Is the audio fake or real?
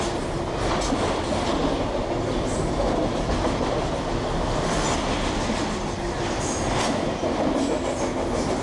real